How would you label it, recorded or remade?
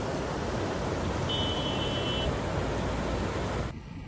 recorded